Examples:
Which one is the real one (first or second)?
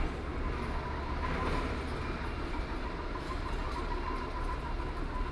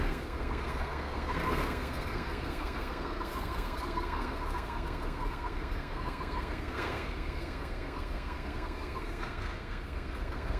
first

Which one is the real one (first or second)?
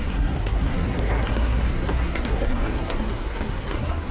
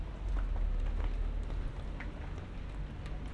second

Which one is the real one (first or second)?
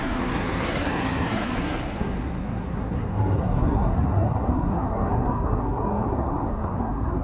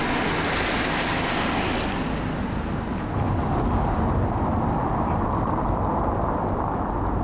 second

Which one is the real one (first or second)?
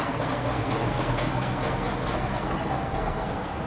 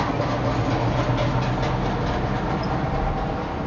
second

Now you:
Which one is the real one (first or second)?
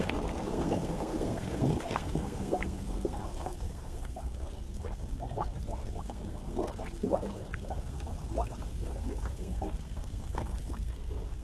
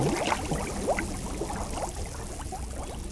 second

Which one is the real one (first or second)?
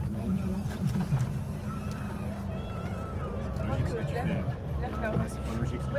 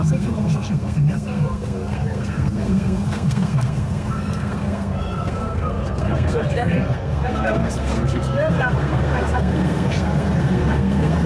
first